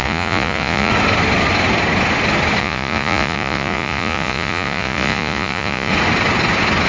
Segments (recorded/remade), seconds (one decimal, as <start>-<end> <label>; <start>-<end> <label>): 0.0-0.9 remade; 0.9-2.6 recorded; 2.6-5.9 remade; 5.9-6.9 recorded